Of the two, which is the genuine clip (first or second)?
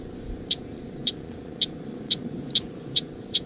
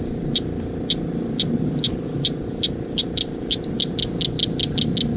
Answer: second